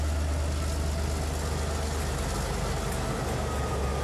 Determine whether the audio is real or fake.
real